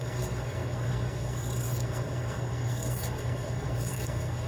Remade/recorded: remade